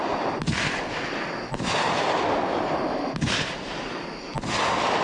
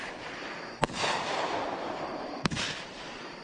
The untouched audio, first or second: first